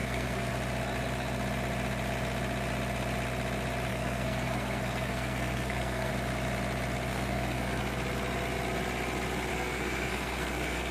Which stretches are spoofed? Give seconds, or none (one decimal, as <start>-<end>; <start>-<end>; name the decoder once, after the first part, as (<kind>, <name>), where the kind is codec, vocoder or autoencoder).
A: 0.0-0.5 (codec, SNAC); 3.9-6.1; 7.1-7.8; 9.5-10.9